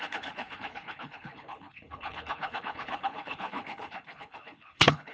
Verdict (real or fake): fake